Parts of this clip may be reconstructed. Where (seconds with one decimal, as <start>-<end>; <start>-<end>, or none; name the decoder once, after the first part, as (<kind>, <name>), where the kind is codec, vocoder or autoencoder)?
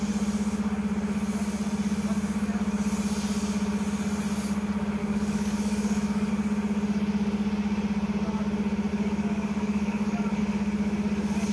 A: 5.0-6.3 (codec, DAC); 8.9-10.4